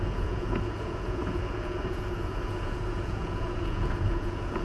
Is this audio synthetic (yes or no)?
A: yes